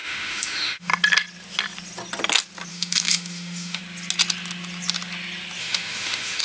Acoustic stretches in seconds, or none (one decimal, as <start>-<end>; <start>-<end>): 0.9-2.7; 3.8-5.6